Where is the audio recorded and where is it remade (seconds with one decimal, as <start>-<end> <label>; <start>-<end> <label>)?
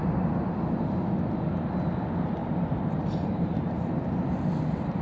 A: 0.0-2.4 recorded; 2.4-3.9 remade; 3.9-5.0 recorded